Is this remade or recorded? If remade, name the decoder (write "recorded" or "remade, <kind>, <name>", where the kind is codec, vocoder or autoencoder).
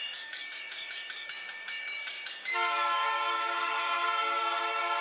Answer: remade, codec, DAC